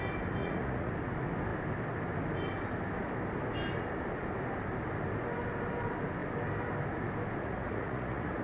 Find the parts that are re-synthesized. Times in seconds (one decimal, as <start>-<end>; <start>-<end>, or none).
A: 0.4-0.9; 7.4-8.4